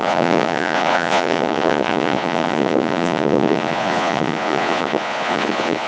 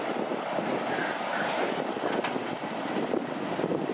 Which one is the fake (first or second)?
first